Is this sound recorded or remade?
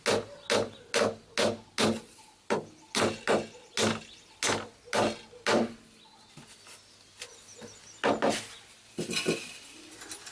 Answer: recorded